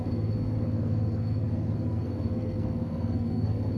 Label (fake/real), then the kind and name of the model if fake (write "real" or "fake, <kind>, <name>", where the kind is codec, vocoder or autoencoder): fake, codec, SNAC